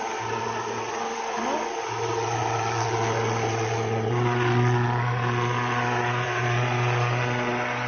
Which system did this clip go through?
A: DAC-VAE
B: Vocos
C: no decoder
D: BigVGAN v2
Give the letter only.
C